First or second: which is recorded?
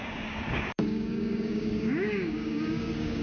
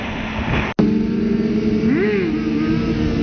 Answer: second